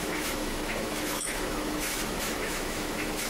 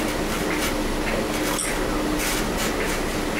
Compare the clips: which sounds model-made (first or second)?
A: first